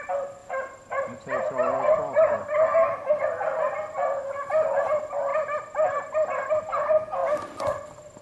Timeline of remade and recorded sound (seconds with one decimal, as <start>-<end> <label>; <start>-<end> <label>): 0.0-8.2 recorded